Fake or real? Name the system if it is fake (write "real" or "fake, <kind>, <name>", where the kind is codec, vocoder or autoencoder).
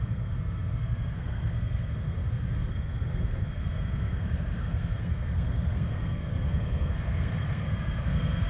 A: fake, codec, SNAC